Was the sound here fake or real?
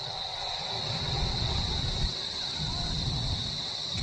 fake